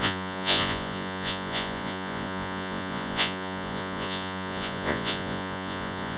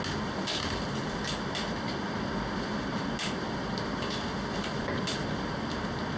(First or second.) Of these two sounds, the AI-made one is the first